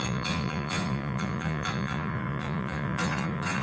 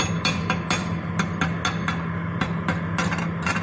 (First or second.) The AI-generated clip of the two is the first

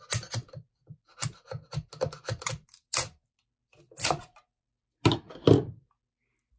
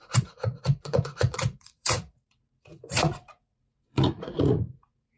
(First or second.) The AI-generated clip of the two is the second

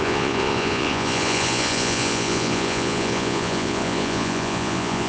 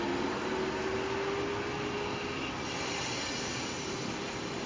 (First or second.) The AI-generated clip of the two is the first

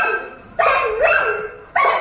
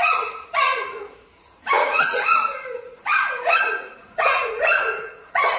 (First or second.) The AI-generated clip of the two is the second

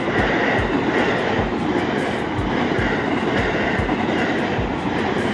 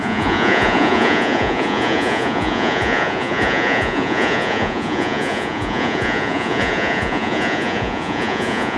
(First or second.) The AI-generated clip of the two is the second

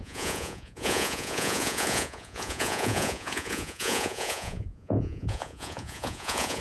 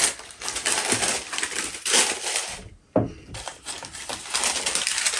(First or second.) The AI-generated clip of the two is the first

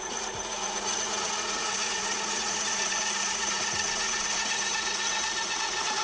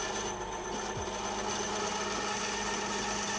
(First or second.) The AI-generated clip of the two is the first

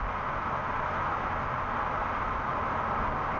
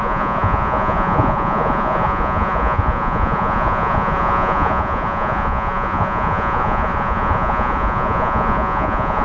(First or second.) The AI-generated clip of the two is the second